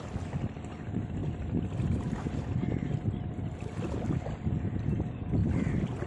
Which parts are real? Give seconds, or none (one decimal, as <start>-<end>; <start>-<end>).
0.0-6.1